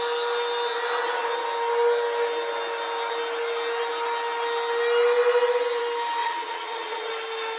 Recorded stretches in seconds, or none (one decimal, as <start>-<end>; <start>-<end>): 0.0-6.2; 7.1-7.6